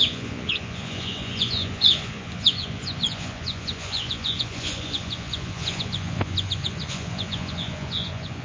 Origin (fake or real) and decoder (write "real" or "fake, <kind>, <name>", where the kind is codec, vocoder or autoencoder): fake, vocoder, Vocos